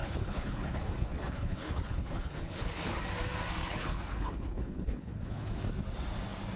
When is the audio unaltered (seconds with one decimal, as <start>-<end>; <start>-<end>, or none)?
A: 3.0-3.6; 5.5-6.6